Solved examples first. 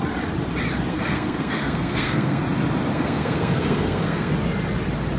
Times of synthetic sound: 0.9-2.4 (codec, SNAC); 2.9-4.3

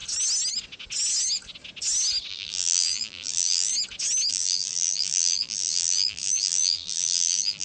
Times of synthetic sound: 2.3-3.7 (vocoder, BigVGAN v2); 4.3-7.6

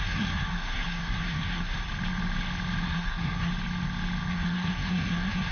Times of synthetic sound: 0.0-1.9 (codec, SNAC); 2.8-3.5; 4.3-5.5